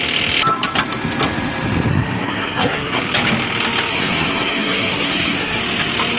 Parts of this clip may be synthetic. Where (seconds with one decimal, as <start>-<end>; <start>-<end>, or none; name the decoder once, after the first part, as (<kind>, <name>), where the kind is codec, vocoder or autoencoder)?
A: 1.9-3.0 (codec, SNAC); 3.9-5.6